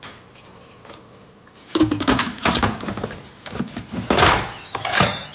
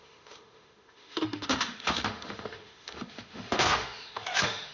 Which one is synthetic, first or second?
second